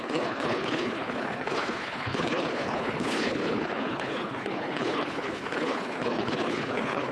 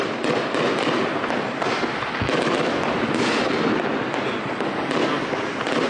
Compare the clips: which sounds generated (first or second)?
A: first